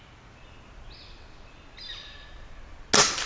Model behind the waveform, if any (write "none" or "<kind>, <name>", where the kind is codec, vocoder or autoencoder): none